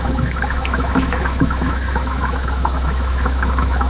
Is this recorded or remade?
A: remade